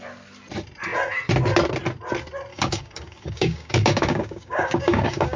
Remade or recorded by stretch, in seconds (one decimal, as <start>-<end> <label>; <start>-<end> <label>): 0.0-2.5 recorded; 2.5-5.4 remade